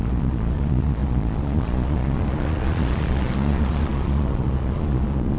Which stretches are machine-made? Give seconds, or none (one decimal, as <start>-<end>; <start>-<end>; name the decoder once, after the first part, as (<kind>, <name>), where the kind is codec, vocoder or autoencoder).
0.0-5.4 (vocoder, Vocos)